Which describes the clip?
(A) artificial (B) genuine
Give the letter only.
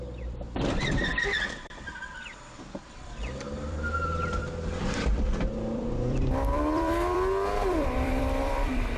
A